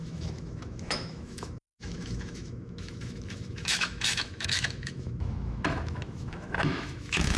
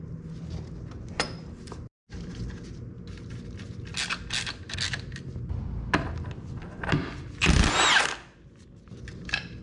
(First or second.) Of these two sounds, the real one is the second